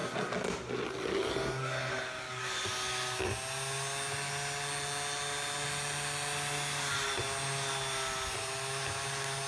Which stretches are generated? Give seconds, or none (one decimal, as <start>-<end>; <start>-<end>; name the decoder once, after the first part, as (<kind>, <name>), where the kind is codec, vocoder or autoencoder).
none